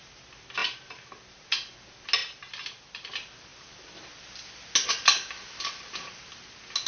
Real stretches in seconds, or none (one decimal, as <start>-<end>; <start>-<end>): 0.0-0.6; 1.4-2.2; 3.1-3.5; 4.0-5.0; 6.2-6.9

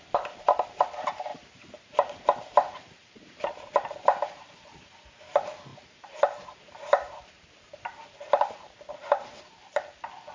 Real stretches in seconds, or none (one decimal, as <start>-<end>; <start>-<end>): 0.0-1.3; 3.5-5.7; 9.4-10.3

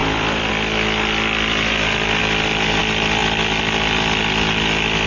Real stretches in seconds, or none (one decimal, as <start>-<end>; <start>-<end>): 0.5-2.2; 2.8-3.2; 4.3-5.1

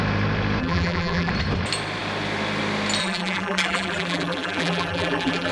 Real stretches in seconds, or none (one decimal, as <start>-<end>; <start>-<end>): 0.0-0.6; 1.3-3.0